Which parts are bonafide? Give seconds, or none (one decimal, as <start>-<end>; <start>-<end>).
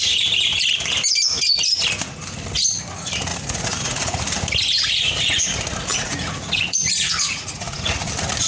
0.0-3.3; 4.2-5.9; 8.1-8.5